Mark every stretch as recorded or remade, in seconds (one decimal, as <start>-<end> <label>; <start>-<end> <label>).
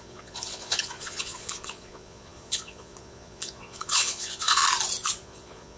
0.0-4.6 remade; 4.6-5.2 recorded; 5.2-5.8 remade